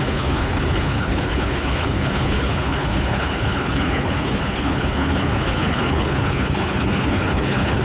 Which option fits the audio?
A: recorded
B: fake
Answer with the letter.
B